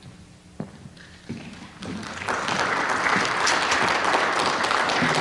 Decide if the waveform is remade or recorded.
recorded